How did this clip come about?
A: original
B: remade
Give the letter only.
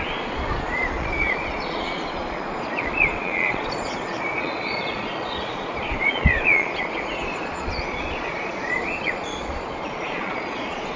B